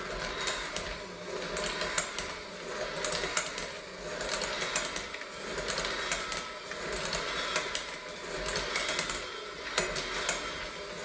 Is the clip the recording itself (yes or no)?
yes